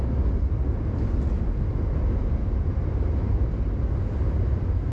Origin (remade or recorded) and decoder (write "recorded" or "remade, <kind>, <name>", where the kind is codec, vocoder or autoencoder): recorded